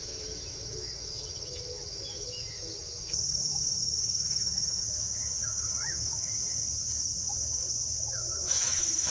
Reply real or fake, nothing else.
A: fake